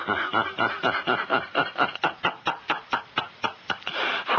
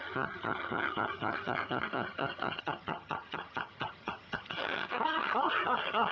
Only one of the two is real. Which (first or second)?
first